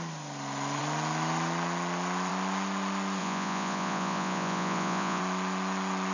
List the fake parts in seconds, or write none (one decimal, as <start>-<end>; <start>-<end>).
3.2-5.2